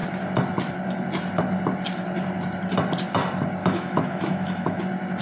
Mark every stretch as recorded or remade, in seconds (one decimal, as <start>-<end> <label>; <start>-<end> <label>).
0.0-3.6 recorded; 3.6-4.8 remade; 4.8-5.2 recorded